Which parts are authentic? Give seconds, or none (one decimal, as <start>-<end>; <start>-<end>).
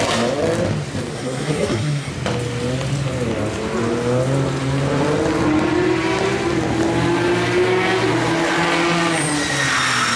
0.0-1.1; 2.1-10.2